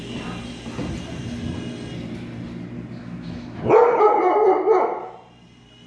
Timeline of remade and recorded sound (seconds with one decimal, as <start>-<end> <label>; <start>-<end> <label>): 0.0-3.0 recorded; 3.0-3.6 remade; 3.6-5.9 recorded